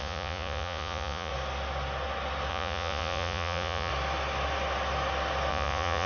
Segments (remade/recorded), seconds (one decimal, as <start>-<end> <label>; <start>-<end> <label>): 0.0-1.3 remade; 1.3-2.5 recorded; 2.5-3.9 remade; 3.9-5.5 recorded; 5.5-6.1 remade